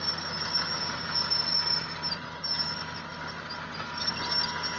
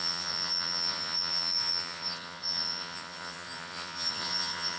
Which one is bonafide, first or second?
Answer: first